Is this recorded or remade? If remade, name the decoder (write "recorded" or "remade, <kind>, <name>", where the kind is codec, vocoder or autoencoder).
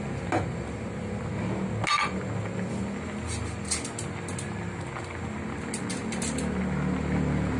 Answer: recorded